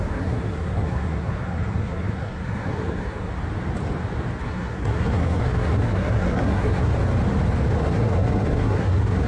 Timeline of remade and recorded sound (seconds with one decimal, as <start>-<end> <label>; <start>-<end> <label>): 0.0-3.3 remade; 3.3-4.4 recorded; 4.4-6.9 remade; 6.9-7.8 recorded; 7.8-9.3 remade

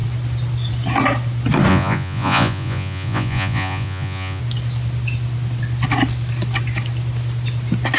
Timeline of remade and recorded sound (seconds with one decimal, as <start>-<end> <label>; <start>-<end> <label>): 0.0-1.7 recorded; 1.7-4.4 remade; 4.4-8.0 recorded